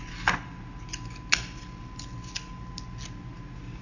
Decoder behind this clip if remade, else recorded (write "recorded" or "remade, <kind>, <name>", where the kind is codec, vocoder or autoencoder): recorded